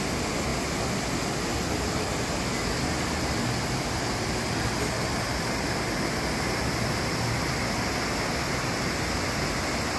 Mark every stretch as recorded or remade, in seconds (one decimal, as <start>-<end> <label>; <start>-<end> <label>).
0.0-10.0 recorded